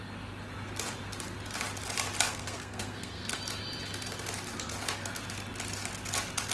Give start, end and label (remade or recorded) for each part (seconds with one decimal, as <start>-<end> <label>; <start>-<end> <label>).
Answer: 0.0-2.3 recorded; 2.3-3.4 remade; 3.4-6.5 recorded

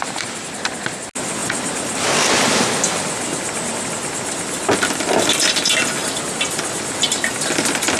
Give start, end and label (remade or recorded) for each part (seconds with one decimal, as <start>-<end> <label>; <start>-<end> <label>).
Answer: 0.0-8.0 recorded

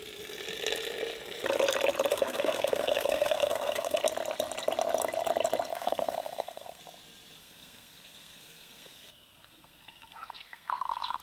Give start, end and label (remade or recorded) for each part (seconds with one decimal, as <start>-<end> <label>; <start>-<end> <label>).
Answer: 0.0-2.1 recorded; 2.1-4.0 remade; 4.0-5.7 recorded; 5.7-6.8 remade; 6.8-7.4 recorded; 7.4-11.2 remade

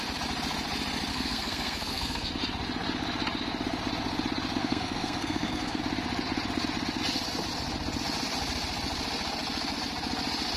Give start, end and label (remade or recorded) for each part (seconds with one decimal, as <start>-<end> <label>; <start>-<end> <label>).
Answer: 0.0-1.1 recorded; 1.1-2.3 remade; 2.3-4.6 recorded; 4.6-5.8 remade; 5.8-10.6 recorded

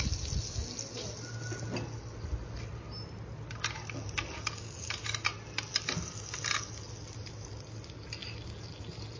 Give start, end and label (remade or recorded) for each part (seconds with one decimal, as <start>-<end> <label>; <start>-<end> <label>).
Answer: 0.0-9.2 recorded

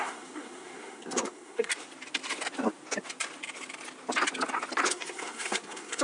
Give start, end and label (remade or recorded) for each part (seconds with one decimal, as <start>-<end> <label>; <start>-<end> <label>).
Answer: 0.0-1.7 remade; 1.7-4.9 recorded; 4.9-6.0 remade

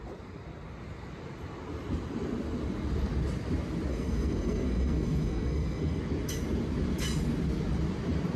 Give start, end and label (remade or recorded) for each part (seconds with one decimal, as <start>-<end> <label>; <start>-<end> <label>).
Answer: 0.0-3.9 recorded; 3.9-6.0 remade; 6.0-8.4 recorded

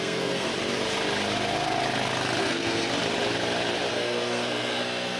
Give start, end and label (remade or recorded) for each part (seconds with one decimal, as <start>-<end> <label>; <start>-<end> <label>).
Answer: 0.0-0.5 remade; 0.5-2.4 recorded; 2.4-2.9 remade; 2.9-3.9 recorded; 3.9-5.2 remade